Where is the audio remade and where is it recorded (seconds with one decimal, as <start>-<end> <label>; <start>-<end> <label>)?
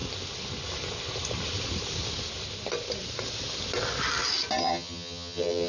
0.0-4.6 recorded; 4.6-5.7 remade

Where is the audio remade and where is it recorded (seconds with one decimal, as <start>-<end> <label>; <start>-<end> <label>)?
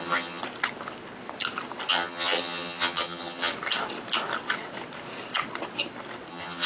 0.0-0.4 remade; 0.4-1.9 recorded; 1.9-3.5 remade; 3.5-6.3 recorded; 6.3-6.7 remade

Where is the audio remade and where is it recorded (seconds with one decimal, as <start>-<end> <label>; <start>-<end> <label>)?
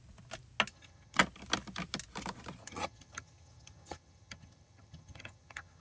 0.0-0.7 recorded; 0.7-1.2 remade; 1.2-2.6 recorded; 2.6-5.8 remade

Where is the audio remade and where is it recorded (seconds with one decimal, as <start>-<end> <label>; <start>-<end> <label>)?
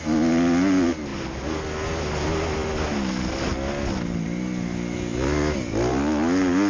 0.0-6.7 recorded